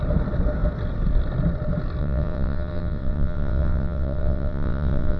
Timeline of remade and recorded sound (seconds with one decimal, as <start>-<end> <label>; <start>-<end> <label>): 0.0-2.0 recorded; 2.0-5.2 remade